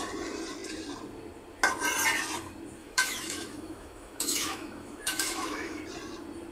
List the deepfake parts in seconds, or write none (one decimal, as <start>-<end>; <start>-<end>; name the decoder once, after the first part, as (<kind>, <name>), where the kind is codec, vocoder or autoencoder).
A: 2.8-5.8 (autoencoder, DAC-VAE)